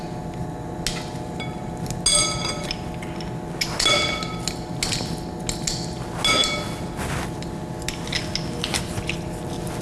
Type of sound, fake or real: real